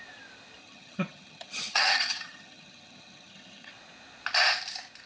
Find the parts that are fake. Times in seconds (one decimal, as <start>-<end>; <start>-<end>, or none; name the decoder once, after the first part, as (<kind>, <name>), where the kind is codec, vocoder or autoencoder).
0.6-3.7 (vocoder, HiFi-GAN)